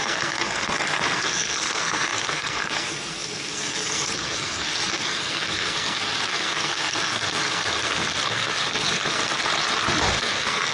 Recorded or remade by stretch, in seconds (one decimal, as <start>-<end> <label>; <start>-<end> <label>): 0.0-9.3 remade; 9.3-10.1 recorded; 10.1-10.7 remade